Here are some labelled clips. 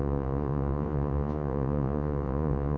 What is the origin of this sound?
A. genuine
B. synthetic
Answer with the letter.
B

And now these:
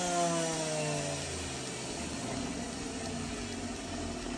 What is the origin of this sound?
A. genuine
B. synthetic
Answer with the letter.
A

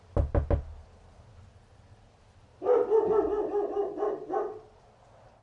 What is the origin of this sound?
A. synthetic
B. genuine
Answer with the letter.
B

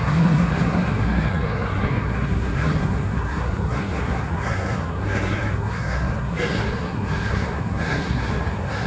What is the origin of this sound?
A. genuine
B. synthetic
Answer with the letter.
B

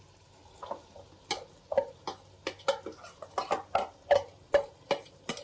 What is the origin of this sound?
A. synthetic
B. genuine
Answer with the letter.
B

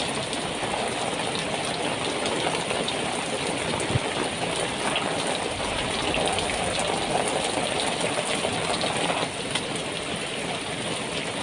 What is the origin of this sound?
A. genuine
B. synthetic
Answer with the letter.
A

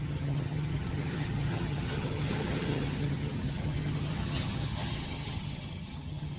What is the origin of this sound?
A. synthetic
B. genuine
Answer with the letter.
A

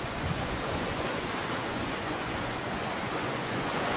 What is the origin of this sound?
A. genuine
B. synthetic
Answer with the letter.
B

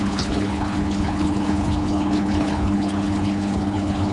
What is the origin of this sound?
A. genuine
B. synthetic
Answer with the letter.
B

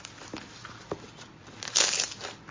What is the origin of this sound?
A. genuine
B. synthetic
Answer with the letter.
A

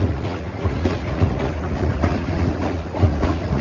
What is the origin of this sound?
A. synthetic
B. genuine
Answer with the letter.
A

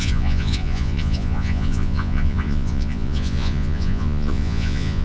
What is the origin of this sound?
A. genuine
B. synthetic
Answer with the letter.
B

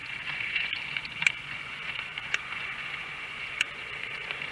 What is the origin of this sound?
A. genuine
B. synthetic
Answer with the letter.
B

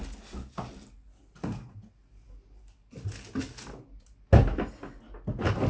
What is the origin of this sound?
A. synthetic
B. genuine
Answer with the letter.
B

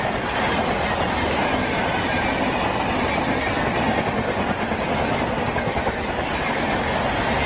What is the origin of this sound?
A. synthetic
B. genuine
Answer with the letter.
B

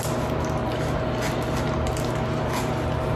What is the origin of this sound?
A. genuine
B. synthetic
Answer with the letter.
A